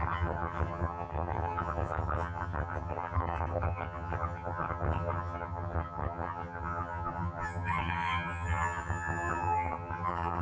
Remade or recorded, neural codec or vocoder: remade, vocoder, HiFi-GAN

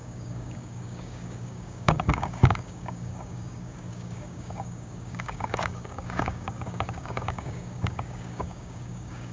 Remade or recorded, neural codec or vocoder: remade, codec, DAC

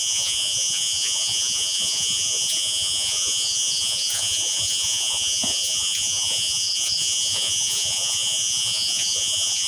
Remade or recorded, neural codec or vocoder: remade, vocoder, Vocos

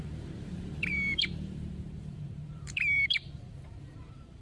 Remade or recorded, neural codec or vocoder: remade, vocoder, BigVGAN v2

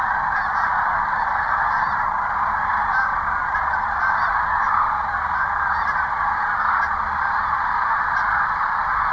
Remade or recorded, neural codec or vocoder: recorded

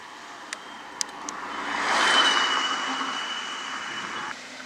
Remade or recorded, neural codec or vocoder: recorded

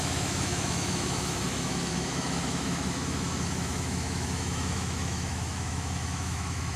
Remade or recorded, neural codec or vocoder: remade, autoencoder, DAC-VAE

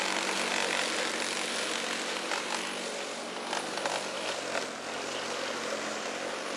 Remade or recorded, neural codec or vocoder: recorded